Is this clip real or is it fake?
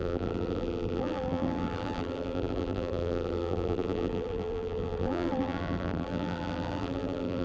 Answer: fake